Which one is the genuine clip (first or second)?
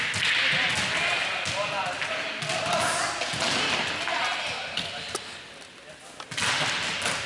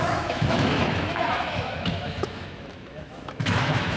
first